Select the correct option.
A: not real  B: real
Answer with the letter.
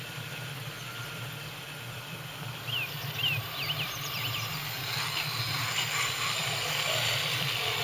A